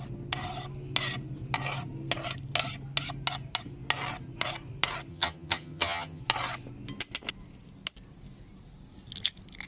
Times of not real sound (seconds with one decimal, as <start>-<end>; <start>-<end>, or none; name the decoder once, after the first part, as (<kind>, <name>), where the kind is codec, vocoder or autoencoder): 5.1-6.2 (vocoder, HiFi-GAN)